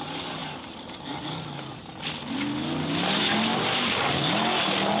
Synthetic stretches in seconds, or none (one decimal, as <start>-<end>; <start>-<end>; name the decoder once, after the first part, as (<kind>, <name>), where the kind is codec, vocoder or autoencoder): none